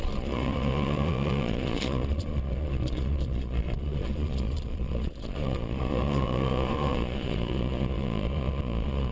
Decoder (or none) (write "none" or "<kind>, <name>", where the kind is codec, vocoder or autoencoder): vocoder, Vocos